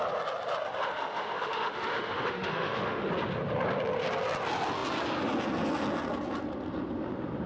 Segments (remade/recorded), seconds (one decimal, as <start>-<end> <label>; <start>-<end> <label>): 0.0-0.8 recorded; 0.8-3.1 remade; 3.1-7.5 recorded